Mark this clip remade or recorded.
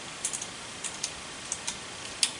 recorded